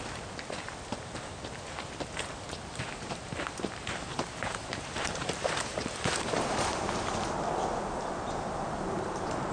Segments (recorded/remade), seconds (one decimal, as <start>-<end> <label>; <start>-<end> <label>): 0.0-4.1 recorded; 4.1-6.8 remade; 6.8-9.5 recorded